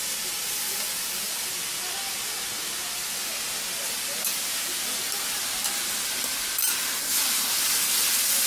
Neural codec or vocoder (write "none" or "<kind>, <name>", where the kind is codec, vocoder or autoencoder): none